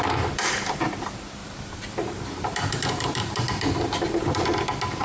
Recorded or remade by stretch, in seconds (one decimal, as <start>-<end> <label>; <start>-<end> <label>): 0.0-1.4 recorded; 1.4-4.4 remade; 4.4-5.0 recorded